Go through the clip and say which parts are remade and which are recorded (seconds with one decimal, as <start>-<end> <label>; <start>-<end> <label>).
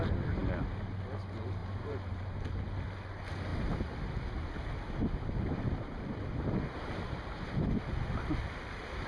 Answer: 0.0-1.6 recorded; 1.6-2.4 remade; 2.4-9.1 recorded